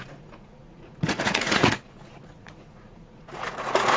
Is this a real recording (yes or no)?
no